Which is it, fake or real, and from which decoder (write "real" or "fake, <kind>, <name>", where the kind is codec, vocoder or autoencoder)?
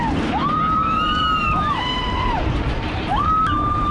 fake, vocoder, BigVGAN v2